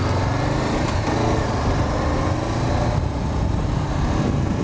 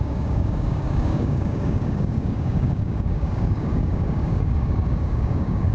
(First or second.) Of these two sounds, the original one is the first